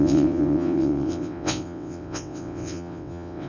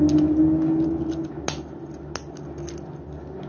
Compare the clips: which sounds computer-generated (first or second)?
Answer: first